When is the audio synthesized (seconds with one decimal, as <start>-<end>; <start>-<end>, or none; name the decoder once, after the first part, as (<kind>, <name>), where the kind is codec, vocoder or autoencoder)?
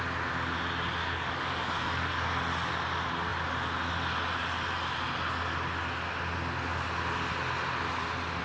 1.0-2.3 (codec, DAC)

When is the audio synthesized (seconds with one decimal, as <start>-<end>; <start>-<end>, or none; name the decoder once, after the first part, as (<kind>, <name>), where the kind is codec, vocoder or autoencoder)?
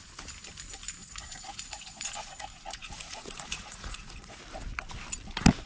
1.0-4.4 (vocoder, Vocos)